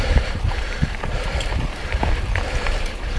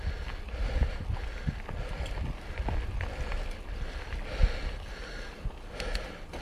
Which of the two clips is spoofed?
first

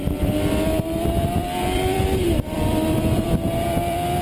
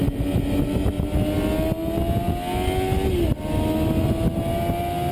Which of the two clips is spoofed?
first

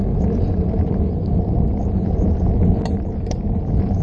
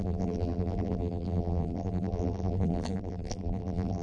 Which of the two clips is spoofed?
second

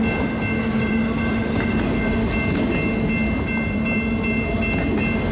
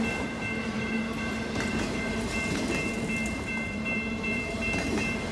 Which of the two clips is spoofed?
second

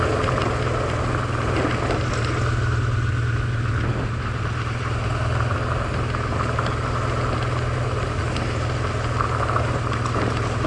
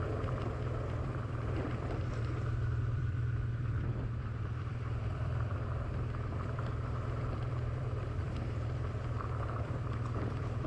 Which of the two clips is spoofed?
second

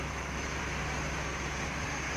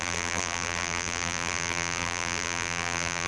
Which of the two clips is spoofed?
second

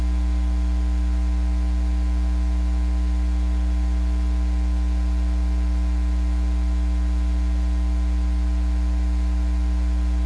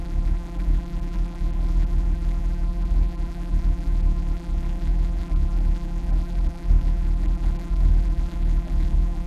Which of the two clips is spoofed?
second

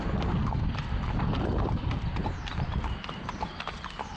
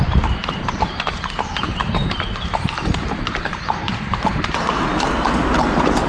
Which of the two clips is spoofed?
second